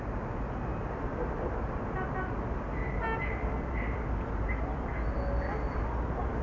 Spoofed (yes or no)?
no